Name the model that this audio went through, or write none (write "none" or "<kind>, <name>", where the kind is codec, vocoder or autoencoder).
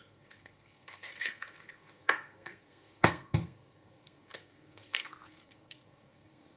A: codec, SNAC